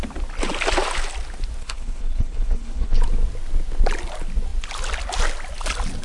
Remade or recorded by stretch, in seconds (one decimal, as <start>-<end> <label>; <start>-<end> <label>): 0.0-1.6 recorded; 1.6-3.0 remade; 3.0-6.0 recorded